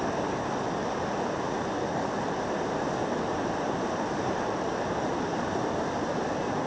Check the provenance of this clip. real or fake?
real